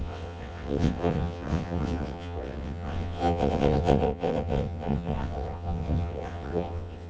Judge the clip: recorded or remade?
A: remade